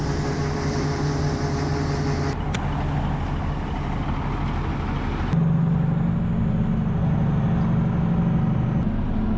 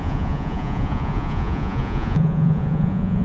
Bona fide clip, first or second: first